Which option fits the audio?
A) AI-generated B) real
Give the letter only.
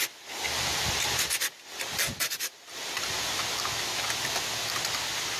B